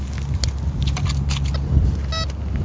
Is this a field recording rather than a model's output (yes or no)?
yes